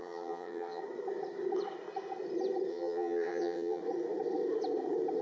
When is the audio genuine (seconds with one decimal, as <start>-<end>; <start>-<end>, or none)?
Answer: 0.8-2.7; 3.8-5.2

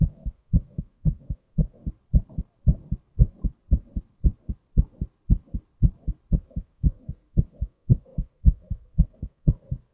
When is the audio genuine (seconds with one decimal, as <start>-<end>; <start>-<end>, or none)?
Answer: 1.8-6.3

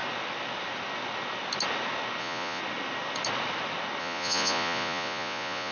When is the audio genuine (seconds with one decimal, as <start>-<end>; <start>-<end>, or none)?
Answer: 0.0-2.2; 2.6-4.0

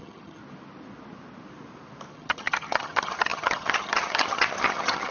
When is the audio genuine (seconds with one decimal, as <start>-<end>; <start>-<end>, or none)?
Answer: 0.4-2.1

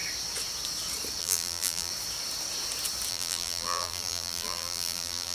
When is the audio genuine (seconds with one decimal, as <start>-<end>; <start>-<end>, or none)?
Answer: 0.0-1.2; 1.9-3.1

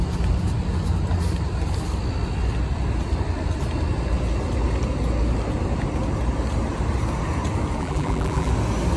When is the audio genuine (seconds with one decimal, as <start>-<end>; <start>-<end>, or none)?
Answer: 0.0-7.8; 8.5-9.0